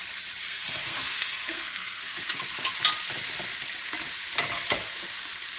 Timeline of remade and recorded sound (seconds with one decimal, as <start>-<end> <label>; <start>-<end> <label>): 0.0-0.4 recorded; 0.4-2.4 remade; 2.4-5.6 recorded